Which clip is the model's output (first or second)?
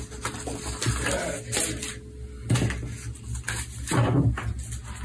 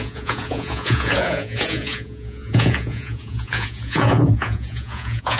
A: second